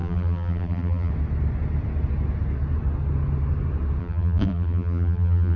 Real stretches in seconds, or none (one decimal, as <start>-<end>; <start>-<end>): 1.1-4.0